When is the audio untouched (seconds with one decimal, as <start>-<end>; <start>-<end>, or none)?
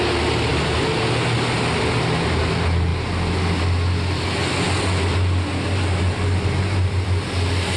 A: 0.0-7.8